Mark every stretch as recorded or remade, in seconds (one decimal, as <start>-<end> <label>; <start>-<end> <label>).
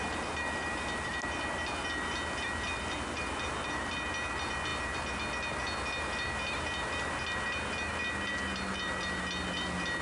0.0-10.0 recorded